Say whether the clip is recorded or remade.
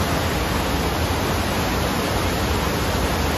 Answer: recorded